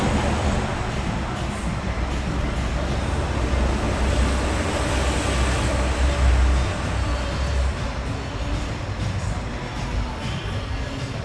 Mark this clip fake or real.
real